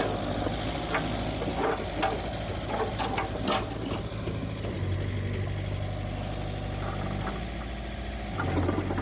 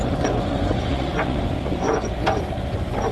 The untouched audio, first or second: first